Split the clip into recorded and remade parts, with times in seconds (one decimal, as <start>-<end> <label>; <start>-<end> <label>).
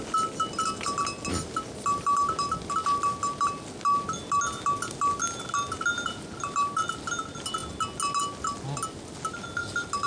0.0-10.1 recorded